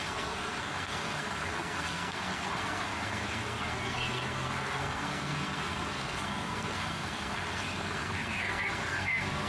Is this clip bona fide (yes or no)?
no